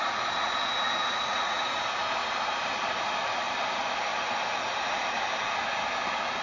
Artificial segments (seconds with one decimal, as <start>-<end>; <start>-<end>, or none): 1.1-1.8